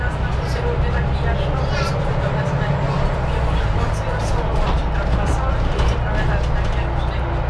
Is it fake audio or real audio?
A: real